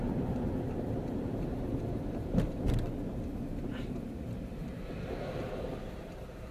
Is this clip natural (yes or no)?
no